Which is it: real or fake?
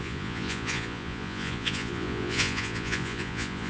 fake